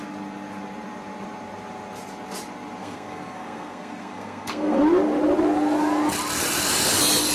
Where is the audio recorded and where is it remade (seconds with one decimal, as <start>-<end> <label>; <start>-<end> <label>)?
0.0-2.8 recorded; 2.8-4.8 remade; 4.8-7.3 recorded